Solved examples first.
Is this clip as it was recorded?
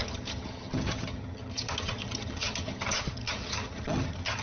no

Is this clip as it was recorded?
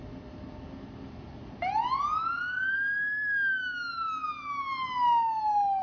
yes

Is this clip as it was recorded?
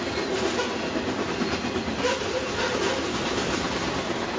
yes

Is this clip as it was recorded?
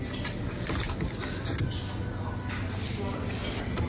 yes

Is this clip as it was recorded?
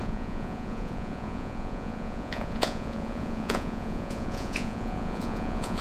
no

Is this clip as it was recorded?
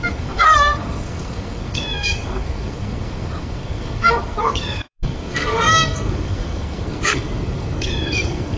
no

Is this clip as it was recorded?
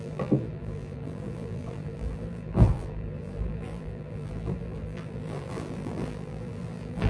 no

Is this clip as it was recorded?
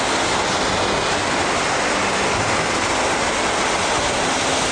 yes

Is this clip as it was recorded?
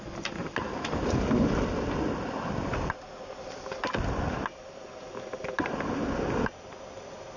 no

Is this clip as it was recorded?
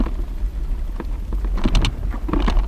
yes